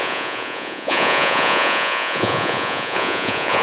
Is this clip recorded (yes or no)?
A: no